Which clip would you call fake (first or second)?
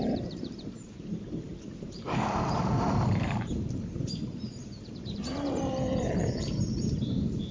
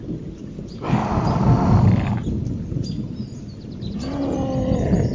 first